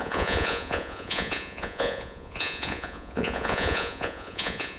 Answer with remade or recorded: remade